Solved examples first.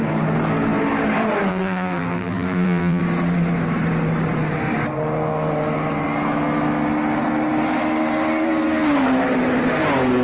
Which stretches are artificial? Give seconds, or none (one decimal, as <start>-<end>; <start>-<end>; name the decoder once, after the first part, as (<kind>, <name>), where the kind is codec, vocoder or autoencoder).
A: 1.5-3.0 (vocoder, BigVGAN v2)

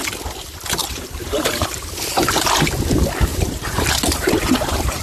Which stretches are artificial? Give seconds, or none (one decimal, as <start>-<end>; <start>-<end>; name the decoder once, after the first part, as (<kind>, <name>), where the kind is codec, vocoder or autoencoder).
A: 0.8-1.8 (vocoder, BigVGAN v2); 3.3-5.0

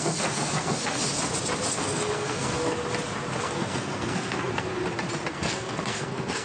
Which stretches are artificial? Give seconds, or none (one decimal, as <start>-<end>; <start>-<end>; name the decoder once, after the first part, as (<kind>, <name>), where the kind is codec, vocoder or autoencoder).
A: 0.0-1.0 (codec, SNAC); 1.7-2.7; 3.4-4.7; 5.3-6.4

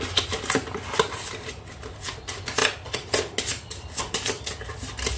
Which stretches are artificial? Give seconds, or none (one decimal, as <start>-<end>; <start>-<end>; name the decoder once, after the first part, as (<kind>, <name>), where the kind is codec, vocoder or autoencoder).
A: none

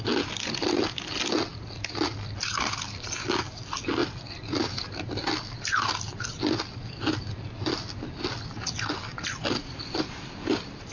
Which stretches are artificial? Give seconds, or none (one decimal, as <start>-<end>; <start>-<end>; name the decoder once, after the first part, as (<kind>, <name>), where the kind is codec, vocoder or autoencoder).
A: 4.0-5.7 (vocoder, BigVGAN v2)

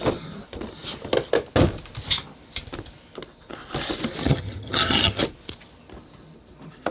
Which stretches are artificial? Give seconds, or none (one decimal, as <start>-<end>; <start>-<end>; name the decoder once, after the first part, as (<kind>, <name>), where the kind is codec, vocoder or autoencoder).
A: 4.2-5.2 (vocoder, HiFi-GAN)

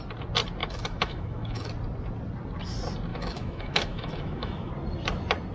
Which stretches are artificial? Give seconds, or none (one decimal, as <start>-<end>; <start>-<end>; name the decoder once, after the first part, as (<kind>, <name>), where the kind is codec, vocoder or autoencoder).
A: 0.6-1.7 (autoencoder, DAC-VAE); 3.1-4.7